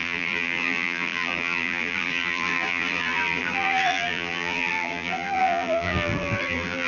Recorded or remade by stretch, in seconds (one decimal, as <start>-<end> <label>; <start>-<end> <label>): 0.0-6.9 remade